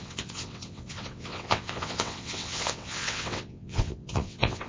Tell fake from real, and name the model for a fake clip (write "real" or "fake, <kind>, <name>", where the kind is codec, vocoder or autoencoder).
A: fake, vocoder, WaveNeXt